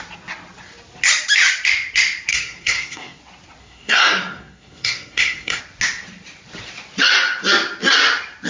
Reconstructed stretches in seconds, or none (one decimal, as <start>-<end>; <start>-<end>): 2.3-3.2; 3.6-5.6